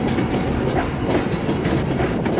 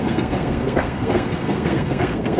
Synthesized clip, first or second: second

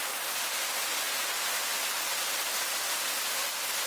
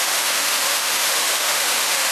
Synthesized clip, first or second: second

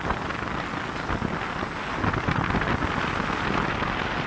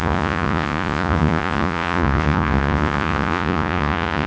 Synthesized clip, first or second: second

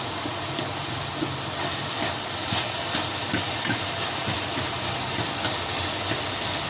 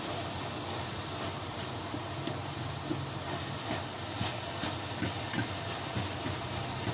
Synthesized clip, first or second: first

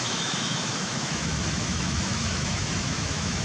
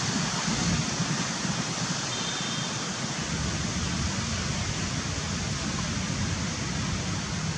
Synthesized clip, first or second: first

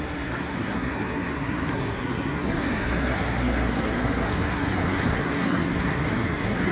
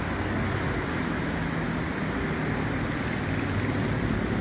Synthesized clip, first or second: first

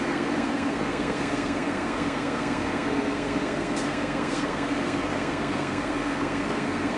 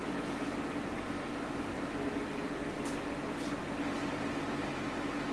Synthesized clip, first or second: first